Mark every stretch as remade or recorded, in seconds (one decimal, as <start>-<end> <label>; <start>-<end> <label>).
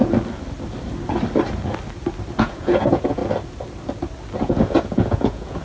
0.0-2.4 recorded; 2.4-3.2 remade; 3.2-4.4 recorded; 4.4-5.6 remade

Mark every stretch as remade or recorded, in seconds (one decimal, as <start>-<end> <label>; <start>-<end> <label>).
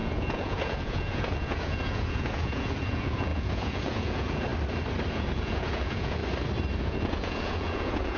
0.0-4.5 remade; 4.5-5.1 recorded; 5.1-6.2 remade; 6.2-6.8 recorded; 6.8-8.2 remade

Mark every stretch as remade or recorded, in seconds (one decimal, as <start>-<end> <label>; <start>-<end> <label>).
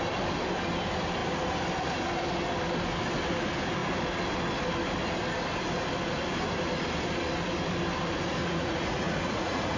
0.0-8.4 recorded; 8.4-9.8 remade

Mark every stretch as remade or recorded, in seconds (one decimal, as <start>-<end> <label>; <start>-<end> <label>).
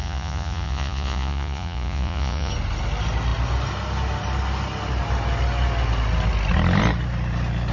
0.0-2.5 remade; 2.5-7.7 recorded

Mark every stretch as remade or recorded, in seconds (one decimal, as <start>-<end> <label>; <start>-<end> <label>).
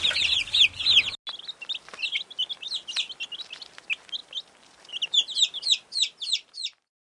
0.0-7.1 recorded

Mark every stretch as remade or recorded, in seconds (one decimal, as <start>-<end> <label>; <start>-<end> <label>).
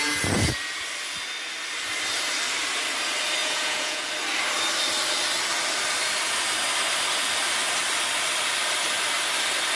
0.0-3.4 recorded; 3.4-4.1 remade; 4.1-9.8 recorded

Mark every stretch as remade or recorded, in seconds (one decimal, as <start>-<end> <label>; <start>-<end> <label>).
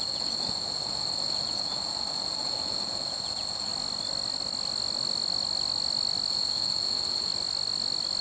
0.0-3.7 remade; 3.7-6.3 recorded; 6.3-7.3 remade; 7.3-8.2 recorded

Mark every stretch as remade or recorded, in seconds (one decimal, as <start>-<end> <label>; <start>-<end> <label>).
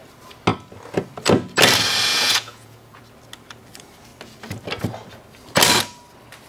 0.0-2.1 recorded; 2.1-3.0 remade; 3.0-6.5 recorded